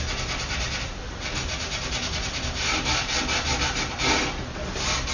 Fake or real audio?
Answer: real